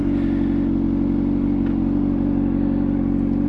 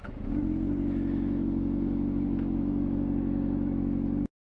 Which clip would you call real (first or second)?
first